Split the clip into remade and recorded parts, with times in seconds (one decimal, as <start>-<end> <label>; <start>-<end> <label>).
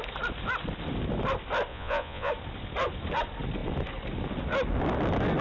0.0-1.7 recorded; 1.7-2.3 remade; 2.3-5.4 recorded